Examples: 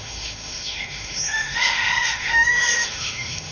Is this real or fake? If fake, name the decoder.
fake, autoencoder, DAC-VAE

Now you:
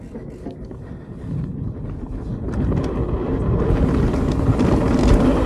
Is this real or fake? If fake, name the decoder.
real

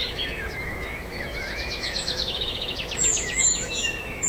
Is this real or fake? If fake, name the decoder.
fake, autoencoder, DAC-VAE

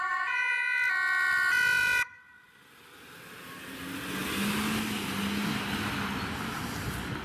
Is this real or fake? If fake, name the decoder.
real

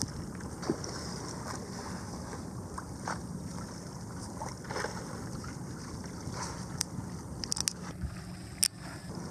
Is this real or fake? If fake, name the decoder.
real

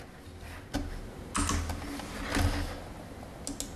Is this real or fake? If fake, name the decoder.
real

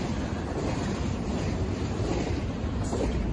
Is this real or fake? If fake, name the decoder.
real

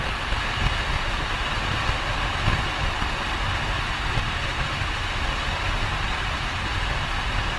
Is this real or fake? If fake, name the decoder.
real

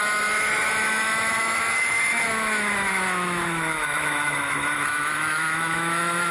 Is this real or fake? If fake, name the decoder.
fake, autoencoder, DAC-VAE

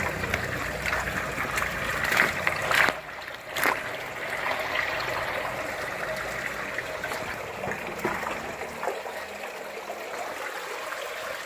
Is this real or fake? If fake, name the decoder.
real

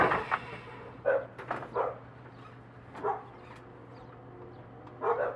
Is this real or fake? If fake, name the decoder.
real